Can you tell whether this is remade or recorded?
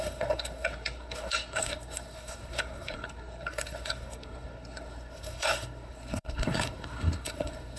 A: remade